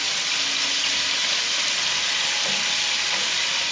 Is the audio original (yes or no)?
yes